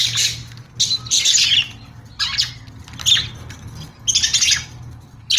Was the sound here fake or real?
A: real